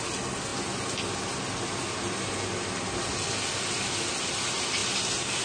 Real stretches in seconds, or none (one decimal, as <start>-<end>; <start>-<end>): 0.0-5.4